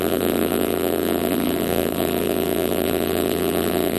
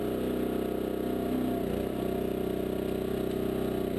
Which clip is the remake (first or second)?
first